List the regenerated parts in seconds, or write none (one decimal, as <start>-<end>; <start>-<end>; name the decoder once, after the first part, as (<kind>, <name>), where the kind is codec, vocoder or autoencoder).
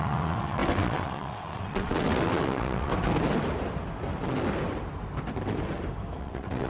0.0-2.9 (vocoder, WaveNeXt); 6.2-6.7